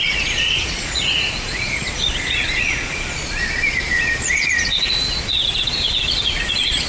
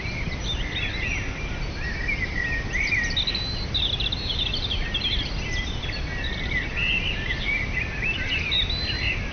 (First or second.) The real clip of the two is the second